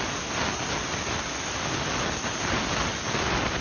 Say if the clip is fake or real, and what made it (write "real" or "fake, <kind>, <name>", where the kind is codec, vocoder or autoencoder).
real